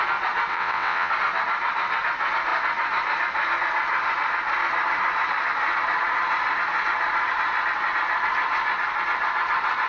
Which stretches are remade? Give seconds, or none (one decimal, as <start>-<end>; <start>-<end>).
0.5-1.1